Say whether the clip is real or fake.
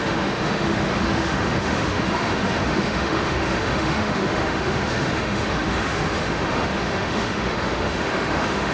fake